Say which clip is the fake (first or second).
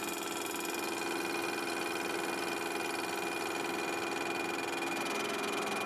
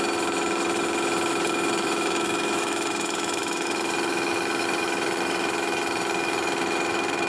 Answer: second